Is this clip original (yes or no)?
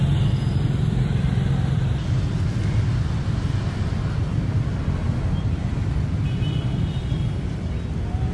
yes